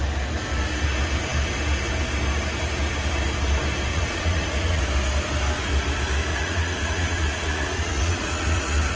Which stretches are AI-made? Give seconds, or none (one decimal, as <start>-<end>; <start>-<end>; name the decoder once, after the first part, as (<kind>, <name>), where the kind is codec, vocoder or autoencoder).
3.9-4.8 (vocoder, Vocos); 6.3-9.0